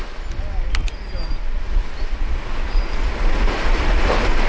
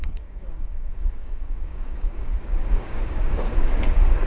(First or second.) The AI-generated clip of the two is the second